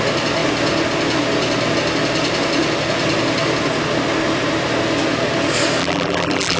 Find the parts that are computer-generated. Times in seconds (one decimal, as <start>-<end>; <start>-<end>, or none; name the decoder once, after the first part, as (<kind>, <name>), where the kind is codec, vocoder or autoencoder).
5.8-6.6 (vocoder, BigVGAN v2)